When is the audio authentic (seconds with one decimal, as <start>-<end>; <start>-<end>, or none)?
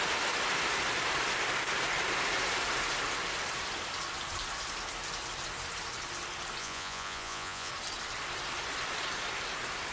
0.0-6.6; 7.7-9.9